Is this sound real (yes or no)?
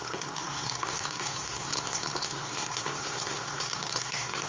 no